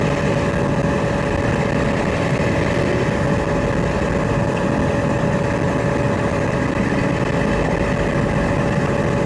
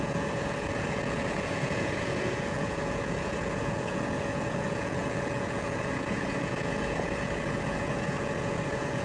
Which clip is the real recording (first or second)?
first